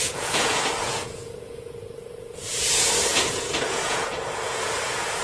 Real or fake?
fake